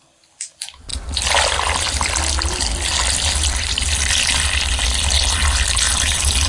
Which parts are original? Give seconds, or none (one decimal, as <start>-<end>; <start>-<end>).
0.0-6.5